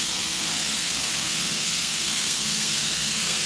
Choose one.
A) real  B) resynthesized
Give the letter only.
B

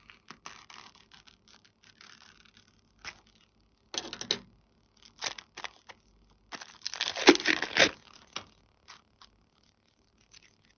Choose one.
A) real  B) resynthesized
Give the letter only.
A